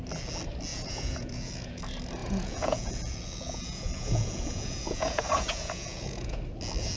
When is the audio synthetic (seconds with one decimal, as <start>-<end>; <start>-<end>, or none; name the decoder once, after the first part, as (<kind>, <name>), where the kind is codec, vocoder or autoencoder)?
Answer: 0.7-1.8 (vocoder, Vocos); 2.2-6.4